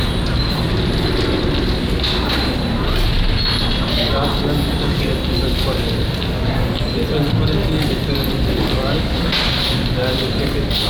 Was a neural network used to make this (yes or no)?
no